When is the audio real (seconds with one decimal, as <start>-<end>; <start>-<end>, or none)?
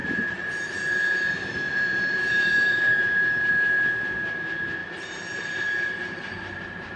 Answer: 3.5-4.8; 6.6-7.0